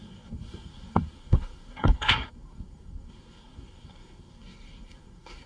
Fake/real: fake